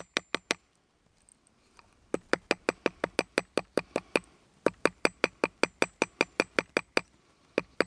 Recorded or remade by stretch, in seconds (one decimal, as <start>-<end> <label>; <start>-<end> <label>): 0.0-7.9 recorded